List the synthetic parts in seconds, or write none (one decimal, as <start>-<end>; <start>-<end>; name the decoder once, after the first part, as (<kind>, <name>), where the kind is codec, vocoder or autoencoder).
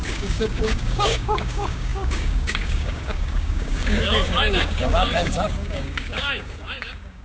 0.0-7.2 (codec, DAC)